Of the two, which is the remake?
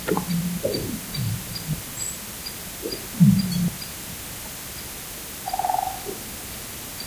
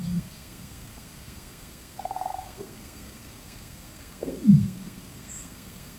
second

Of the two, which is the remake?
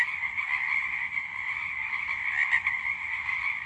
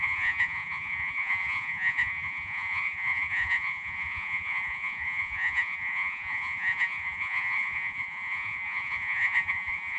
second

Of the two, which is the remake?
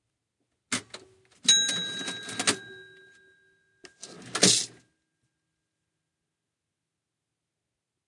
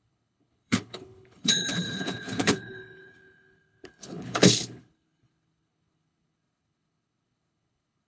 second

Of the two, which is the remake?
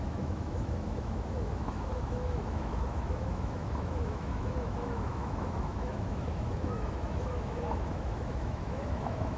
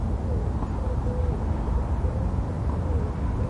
first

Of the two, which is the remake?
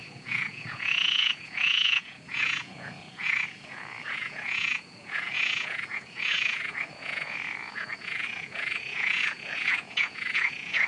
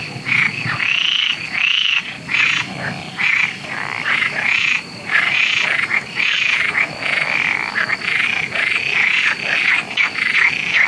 first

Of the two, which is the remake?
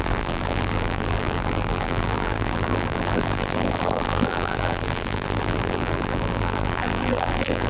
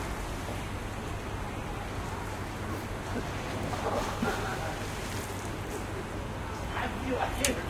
first